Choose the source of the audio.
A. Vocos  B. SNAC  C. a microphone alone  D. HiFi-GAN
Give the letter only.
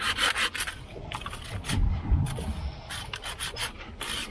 C